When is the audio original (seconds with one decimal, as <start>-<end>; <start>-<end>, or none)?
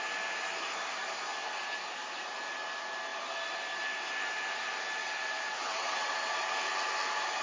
0.0-5.0; 6.5-7.4